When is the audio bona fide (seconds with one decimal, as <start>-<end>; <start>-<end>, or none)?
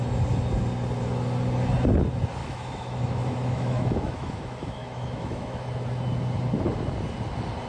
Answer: 0.0-2.4; 5.6-7.7